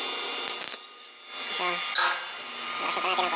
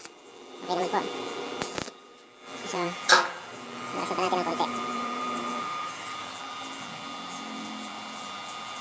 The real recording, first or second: first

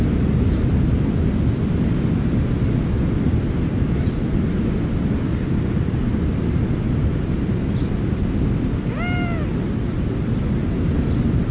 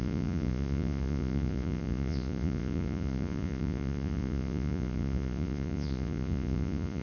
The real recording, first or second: first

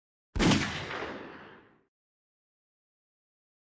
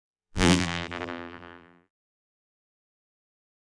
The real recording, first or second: first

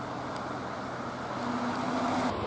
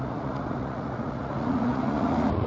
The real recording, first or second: first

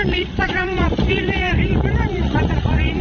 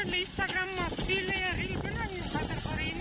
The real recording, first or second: second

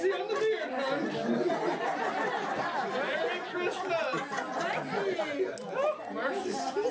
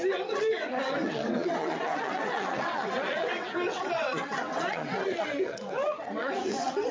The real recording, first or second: first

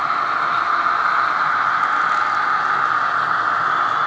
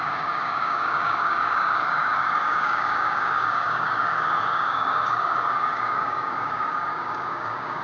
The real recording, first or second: first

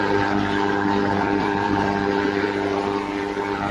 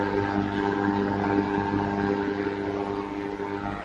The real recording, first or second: second